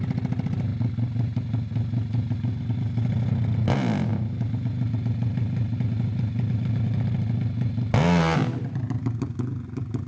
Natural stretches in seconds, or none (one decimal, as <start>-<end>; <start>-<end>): 0.0-10.1